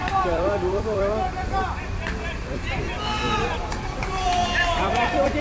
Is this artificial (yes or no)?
yes